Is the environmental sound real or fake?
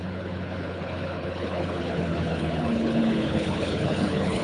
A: fake